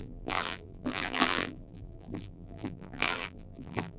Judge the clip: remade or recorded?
remade